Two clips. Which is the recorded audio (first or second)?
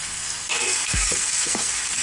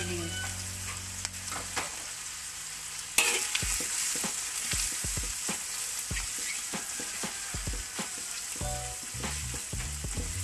second